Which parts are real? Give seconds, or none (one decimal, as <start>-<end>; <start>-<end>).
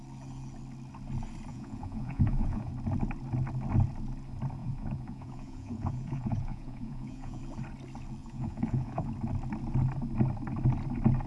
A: 0.0-1.5; 2.7-4.6; 7.4-8.2; 9.1-11.3